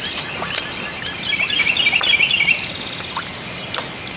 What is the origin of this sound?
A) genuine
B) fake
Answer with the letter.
A